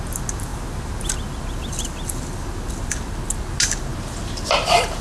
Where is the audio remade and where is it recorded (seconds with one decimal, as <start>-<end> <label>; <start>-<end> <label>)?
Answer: 0.0-3.9 recorded; 3.9-5.0 remade